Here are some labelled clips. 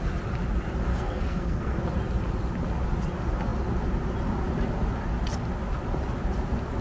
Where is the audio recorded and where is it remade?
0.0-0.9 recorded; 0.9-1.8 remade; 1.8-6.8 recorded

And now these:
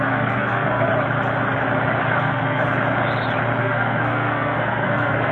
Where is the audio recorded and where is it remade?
0.0-0.9 remade; 0.9-2.2 recorded; 2.2-2.6 remade; 2.6-3.6 recorded; 3.6-5.3 remade

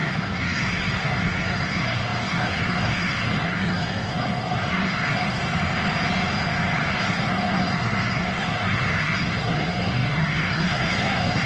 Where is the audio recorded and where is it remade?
0.0-5.4 remade; 5.4-6.9 recorded; 6.9-11.5 remade

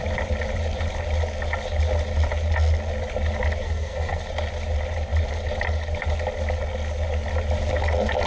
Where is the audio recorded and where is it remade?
0.0-3.6 recorded; 3.6-4.2 remade; 4.2-8.3 recorded

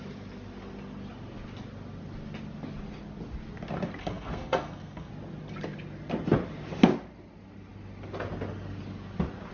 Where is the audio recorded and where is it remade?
0.0-4.0 recorded; 4.0-5.1 remade; 5.1-9.5 recorded